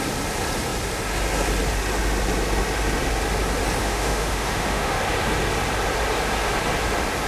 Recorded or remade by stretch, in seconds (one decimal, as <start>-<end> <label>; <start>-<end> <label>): 0.0-3.8 recorded; 3.8-5.0 remade; 5.0-7.3 recorded